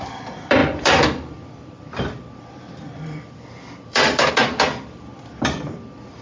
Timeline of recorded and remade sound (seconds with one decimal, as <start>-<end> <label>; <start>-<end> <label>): 0.0-6.2 remade